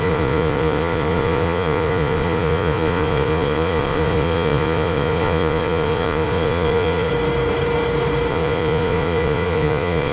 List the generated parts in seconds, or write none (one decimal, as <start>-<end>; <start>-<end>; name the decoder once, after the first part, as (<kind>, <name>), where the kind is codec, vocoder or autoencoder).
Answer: 0.0-7.1 (vocoder, Vocos); 8.3-10.1